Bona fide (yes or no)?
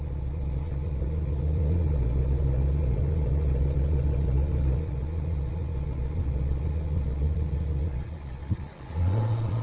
no